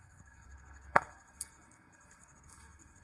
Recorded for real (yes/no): no